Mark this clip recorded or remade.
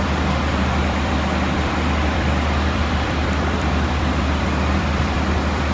remade